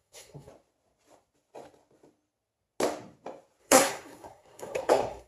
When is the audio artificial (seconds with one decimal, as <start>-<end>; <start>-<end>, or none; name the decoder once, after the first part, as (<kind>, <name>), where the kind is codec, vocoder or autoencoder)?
0.0-0.5 (codec, SNAC); 3.6-5.3